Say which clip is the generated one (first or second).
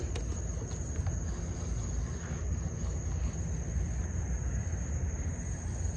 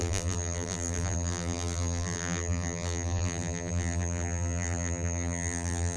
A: second